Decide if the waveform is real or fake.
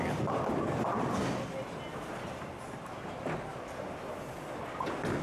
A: real